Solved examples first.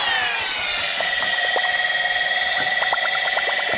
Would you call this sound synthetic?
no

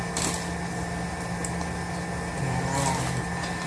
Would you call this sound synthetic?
no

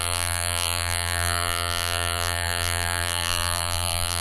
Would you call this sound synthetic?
yes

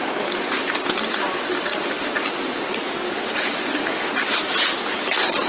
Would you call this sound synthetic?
yes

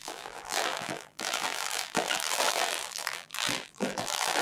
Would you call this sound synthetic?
yes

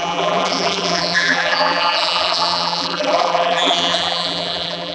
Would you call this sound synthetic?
yes